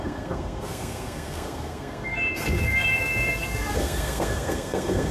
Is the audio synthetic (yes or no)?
yes